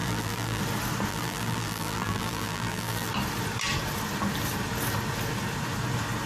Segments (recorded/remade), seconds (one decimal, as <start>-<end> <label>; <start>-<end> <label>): 0.0-0.6 remade; 0.6-1.1 recorded; 1.1-3.1 remade; 3.1-6.3 recorded